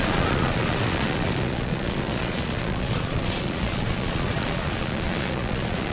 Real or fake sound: fake